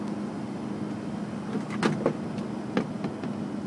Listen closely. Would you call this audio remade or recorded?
recorded